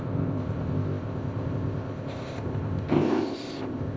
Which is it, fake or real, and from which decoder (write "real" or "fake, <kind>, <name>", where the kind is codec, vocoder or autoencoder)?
fake, codec, ZipCodec